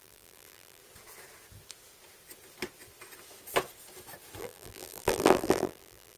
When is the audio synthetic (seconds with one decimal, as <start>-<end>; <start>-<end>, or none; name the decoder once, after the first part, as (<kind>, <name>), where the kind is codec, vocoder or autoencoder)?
0.0-0.8 (vocoder, BigVGAN v2); 4.4-6.2